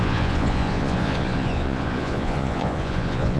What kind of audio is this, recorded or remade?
remade